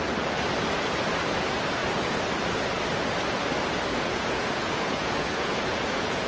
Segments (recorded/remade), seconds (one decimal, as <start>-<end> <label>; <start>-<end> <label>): 0.0-3.9 recorded; 3.9-6.3 remade